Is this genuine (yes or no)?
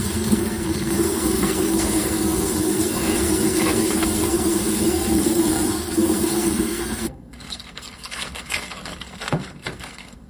no